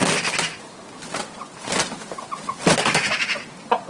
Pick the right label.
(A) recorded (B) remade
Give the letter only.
A